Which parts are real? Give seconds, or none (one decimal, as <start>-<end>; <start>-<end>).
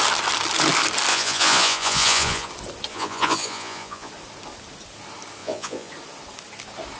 0.0-1.1; 2.5-2.9; 4.1-5.4; 5.9-7.0